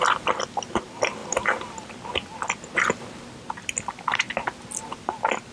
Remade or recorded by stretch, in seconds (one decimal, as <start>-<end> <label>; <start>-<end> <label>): 0.0-1.2 recorded; 1.2-2.1 remade; 2.1-5.5 recorded